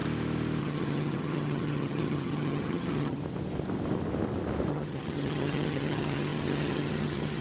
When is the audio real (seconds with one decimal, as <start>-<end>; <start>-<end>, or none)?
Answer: 0.0-0.6; 3.2-4.7